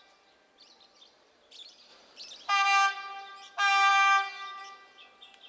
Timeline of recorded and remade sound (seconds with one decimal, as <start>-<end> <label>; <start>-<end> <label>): 0.0-5.5 recorded